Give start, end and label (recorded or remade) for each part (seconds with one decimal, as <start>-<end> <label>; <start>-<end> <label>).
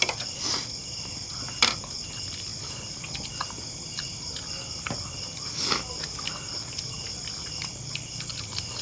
0.0-8.8 recorded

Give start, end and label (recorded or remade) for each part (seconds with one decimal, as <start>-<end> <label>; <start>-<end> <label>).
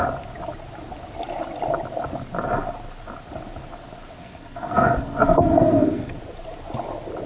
0.0-4.2 recorded; 4.2-6.2 remade; 6.2-7.3 recorded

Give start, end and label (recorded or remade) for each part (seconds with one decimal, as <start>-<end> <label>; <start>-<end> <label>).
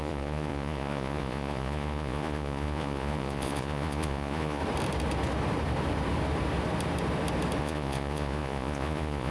0.0-4.6 remade; 4.6-7.6 recorded; 7.6-9.3 remade